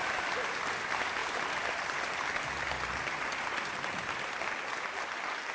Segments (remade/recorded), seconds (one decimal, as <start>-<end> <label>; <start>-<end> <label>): 0.0-1.2 recorded; 1.2-4.4 remade; 4.4-5.5 recorded

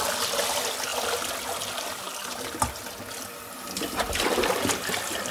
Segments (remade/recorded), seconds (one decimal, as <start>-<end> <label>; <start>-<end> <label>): 0.0-5.3 recorded

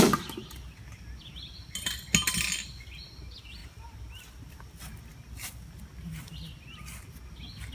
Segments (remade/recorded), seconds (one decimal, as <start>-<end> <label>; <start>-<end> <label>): 0.0-7.7 recorded

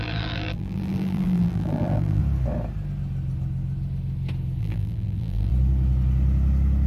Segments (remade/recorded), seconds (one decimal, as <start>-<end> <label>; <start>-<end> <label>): 0.0-2.2 remade; 2.2-4.6 recorded; 4.6-5.5 remade; 5.5-6.9 recorded

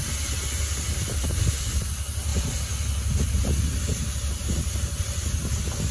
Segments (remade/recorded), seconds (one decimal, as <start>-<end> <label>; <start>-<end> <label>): 0.0-5.9 recorded

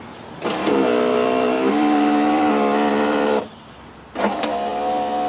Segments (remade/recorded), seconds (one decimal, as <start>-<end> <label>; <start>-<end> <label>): 0.0-1.1 recorded; 1.1-2.5 remade; 2.5-2.9 recorded; 2.9-3.9 remade; 3.9-5.3 recorded

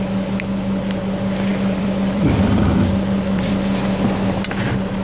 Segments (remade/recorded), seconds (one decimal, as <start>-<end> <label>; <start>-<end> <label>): 0.0-1.5 recorded; 1.5-3.5 remade; 3.5-5.0 recorded